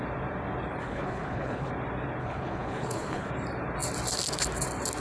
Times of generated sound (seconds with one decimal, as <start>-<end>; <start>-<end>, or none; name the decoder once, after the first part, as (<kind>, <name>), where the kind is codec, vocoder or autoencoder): 0.8-1.7 (codec, HILCodec); 2.2-3.3

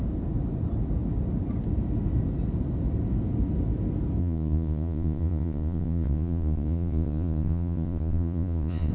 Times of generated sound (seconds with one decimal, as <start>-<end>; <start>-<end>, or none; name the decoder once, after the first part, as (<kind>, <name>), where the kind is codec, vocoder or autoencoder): 4.2-8.9 (vocoder, Vocos)